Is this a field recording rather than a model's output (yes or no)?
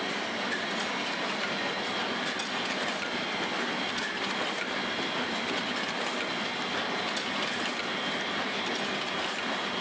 yes